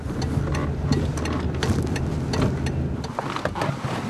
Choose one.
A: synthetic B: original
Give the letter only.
B